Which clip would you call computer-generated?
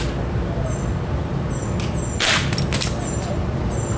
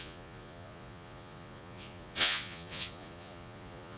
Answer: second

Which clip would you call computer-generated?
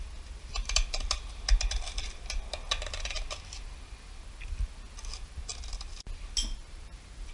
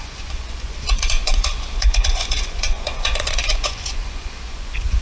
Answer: second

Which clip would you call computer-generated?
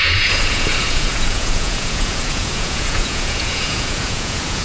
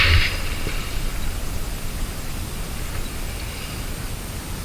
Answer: first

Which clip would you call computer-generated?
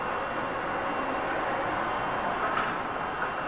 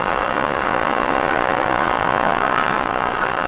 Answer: second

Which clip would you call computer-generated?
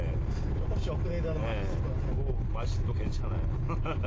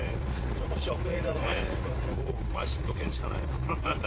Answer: second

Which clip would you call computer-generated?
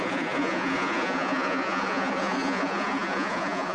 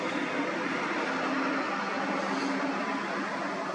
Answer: first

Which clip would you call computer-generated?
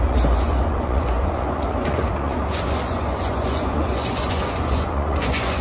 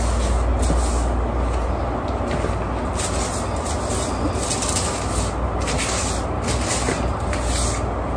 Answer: first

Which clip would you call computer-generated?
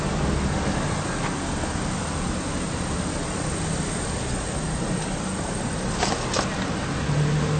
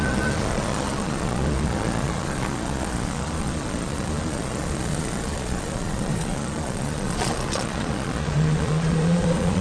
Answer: second